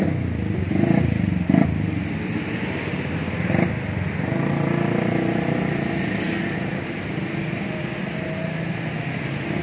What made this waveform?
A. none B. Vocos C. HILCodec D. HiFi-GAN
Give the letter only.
A